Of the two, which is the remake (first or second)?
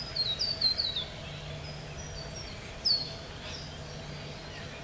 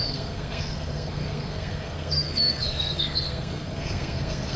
second